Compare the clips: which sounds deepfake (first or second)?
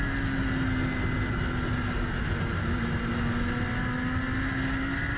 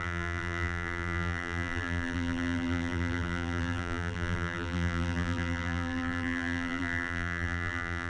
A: second